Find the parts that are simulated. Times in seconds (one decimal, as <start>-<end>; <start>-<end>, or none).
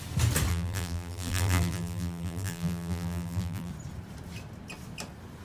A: 0.5-3.7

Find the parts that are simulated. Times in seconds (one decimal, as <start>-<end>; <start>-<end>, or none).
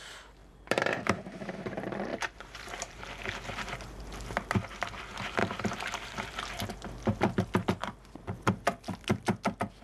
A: 0.4-1.5; 2.1-3.0; 5.4-6.3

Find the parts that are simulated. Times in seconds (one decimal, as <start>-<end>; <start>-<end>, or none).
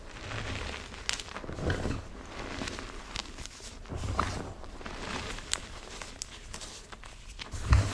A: 3.2-5.6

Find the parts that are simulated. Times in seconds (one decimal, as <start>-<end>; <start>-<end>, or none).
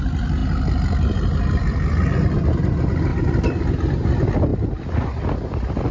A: 0.4-2.5; 3.1-3.7; 4.5-5.9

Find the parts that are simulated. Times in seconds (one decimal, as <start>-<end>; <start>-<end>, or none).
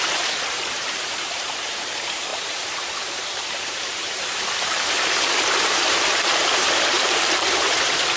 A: 0.0-8.2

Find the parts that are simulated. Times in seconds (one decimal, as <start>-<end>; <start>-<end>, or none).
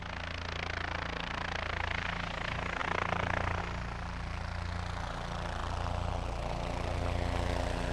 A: none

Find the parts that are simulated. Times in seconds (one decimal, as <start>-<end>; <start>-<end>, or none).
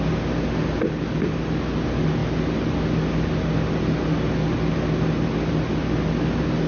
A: none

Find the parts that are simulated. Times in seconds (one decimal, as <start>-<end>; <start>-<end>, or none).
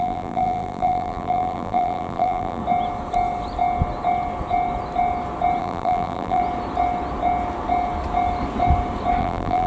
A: 0.0-2.6; 5.6-6.4; 9.2-9.7